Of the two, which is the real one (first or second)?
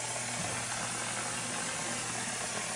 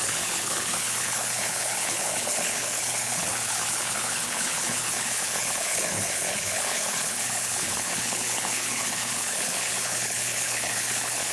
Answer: first